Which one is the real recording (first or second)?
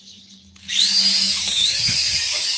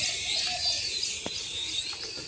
second